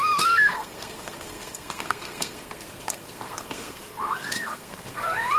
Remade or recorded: remade